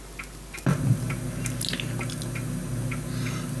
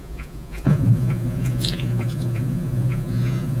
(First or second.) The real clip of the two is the first